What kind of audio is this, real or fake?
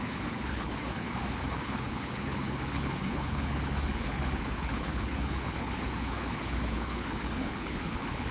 fake